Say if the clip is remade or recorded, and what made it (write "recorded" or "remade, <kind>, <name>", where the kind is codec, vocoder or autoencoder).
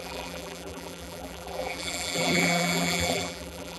remade, vocoder, BigVGAN v2